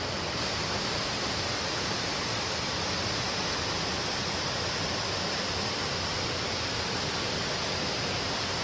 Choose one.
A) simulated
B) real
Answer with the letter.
B